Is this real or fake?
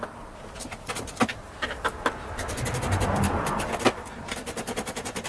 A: real